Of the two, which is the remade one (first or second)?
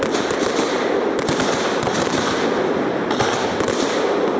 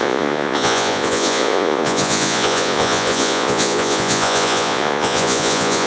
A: second